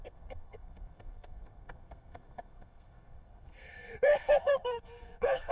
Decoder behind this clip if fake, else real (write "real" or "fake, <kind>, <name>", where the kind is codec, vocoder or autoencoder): fake, codec, SNAC